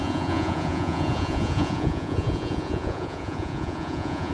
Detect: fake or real fake